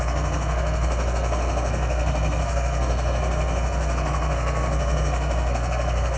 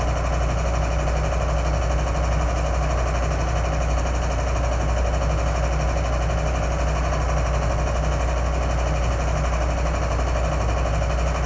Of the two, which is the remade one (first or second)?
first